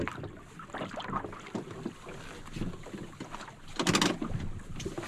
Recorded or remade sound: recorded